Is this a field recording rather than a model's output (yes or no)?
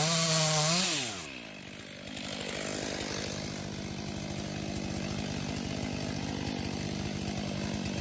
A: yes